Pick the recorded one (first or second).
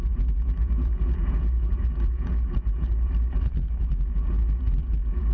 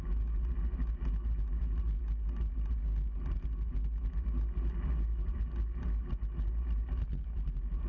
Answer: second